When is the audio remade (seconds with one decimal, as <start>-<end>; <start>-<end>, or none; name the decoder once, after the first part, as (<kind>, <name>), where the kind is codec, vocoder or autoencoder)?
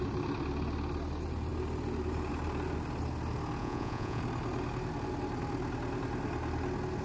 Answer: 3.6-4.2 (vocoder, Vocos)